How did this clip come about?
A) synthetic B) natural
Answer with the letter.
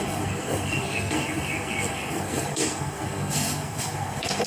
A